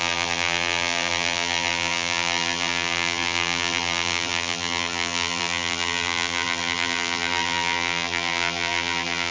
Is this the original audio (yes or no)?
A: no